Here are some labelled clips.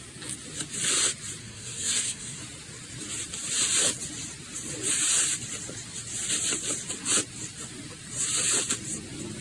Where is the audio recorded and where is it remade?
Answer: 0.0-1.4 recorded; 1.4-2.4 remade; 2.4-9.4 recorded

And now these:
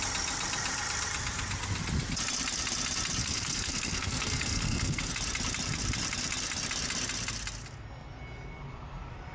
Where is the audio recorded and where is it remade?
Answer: 0.0-3.2 recorded; 3.2-5.1 remade; 5.1-9.3 recorded

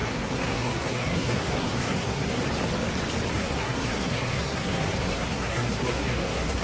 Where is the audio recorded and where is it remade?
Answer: 0.0-2.4 remade; 2.4-3.3 recorded; 3.3-6.6 remade

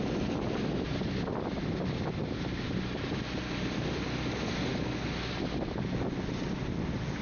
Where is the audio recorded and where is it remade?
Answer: 0.0-7.2 recorded

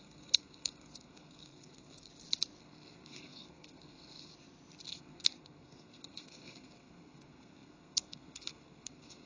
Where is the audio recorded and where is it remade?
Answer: 0.0-2.1 remade; 2.1-2.6 recorded; 2.6-4.3 remade; 4.3-4.9 recorded; 4.9-9.3 remade

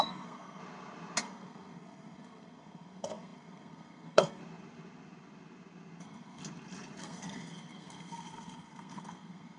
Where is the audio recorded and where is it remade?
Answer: 0.0-0.6 remade; 0.6-1.2 recorded; 1.2-4.4 remade; 4.4-6.0 recorded; 6.0-6.4 remade; 6.4-7.0 recorded; 7.0-9.6 remade